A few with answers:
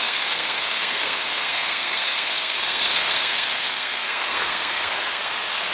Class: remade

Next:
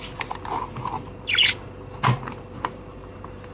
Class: recorded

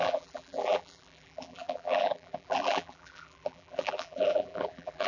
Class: remade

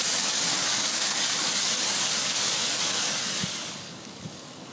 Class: remade